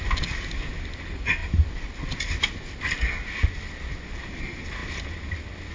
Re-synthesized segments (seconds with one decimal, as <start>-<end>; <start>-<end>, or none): none